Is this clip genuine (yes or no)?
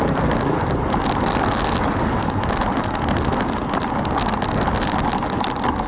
yes